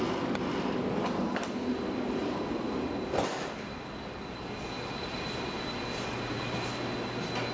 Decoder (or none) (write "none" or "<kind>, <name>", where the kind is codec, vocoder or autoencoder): none